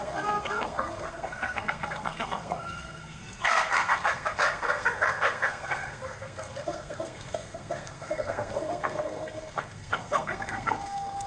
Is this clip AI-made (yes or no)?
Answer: yes